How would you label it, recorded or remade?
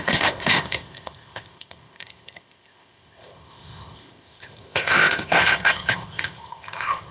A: remade